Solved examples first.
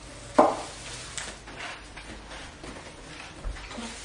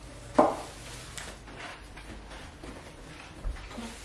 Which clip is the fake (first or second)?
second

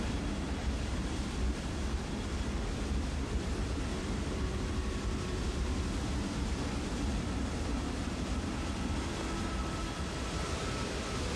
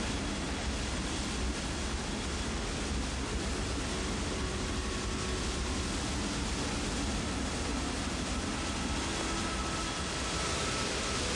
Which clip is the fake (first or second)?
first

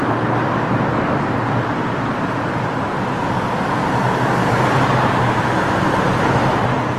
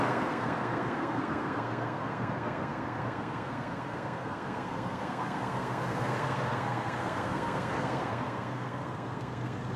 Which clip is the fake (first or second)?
second